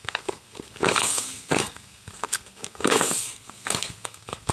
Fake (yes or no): yes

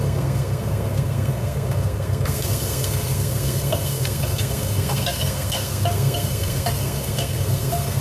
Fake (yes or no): yes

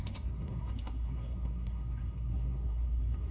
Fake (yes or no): yes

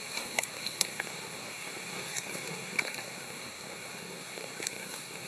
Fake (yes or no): yes